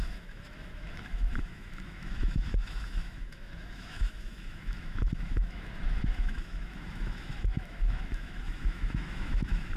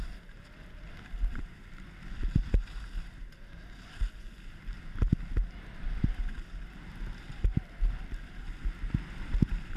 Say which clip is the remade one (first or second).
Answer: first